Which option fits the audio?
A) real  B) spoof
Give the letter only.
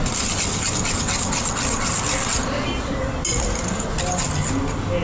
A